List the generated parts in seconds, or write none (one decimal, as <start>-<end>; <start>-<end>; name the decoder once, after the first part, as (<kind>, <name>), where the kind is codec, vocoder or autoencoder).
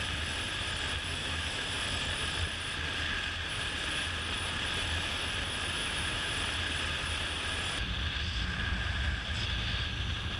1.2-1.8 (autoencoder, DAC-VAE); 5.8-6.3